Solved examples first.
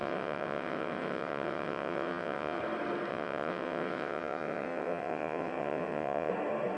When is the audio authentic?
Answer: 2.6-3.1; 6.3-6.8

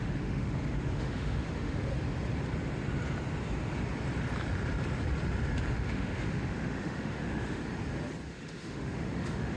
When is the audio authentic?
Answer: 1.9-5.7; 7.6-8.3

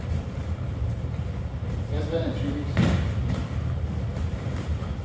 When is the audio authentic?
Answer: 2.3-4.3

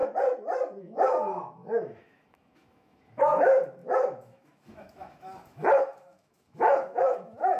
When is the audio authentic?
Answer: 0.0-0.8